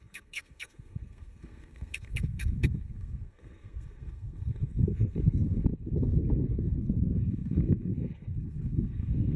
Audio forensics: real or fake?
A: fake